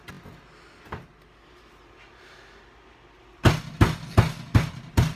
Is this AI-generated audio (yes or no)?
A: no